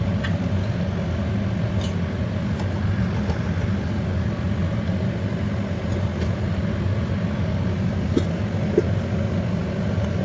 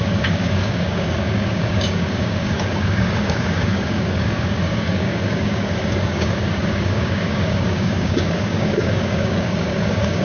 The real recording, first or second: first